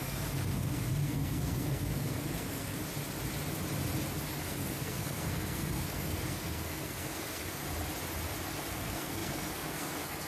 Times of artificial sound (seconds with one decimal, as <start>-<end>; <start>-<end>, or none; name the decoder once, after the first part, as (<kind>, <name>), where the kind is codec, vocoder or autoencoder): 0.0-2.8 (codec, SNAC); 4.3-7.6; 8.7-10.3